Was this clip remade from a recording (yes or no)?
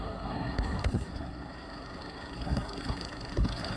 yes